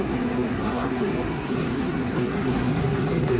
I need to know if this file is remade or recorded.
remade